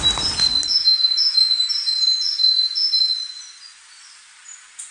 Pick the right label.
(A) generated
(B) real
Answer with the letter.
B